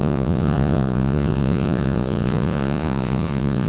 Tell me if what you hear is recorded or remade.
remade